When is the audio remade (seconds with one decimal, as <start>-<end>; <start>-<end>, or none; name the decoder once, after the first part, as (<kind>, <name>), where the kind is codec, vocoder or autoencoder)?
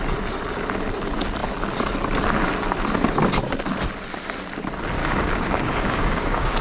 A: 5.0-6.6 (codec, DAC)